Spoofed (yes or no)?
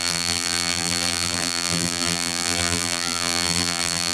yes